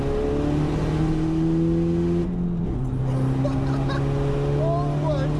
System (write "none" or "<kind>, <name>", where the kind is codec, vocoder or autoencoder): none